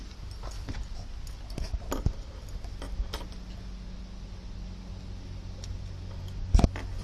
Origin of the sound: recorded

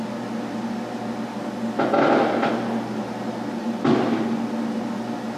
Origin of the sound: recorded